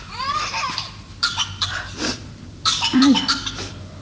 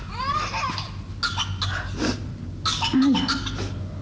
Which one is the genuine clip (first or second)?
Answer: second